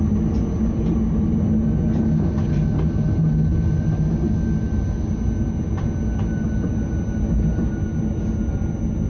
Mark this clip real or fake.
real